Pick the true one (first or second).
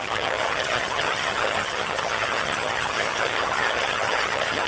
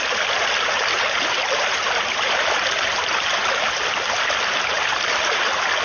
second